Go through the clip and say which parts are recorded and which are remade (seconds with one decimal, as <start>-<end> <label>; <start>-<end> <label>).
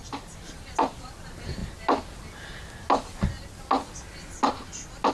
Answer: 0.0-5.1 recorded